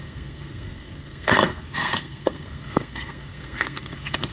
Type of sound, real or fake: fake